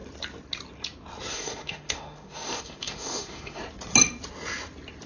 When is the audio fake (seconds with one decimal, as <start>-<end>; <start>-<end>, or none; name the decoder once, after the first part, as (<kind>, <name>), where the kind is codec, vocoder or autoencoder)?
1.3-3.6 (autoencoder, DAC-VAE)

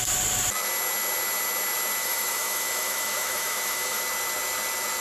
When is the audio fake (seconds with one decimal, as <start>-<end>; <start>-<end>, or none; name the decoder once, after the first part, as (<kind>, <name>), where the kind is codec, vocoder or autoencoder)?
2.0-4.0 (autoencoder, DAC-VAE)